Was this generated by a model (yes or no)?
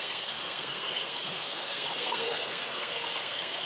yes